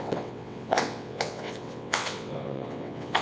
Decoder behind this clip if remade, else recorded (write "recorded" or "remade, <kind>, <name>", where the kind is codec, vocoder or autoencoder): remade, vocoder, WaveNeXt